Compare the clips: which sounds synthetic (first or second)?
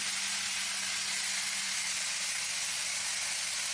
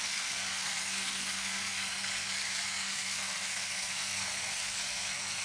second